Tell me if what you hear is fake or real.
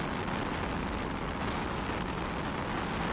real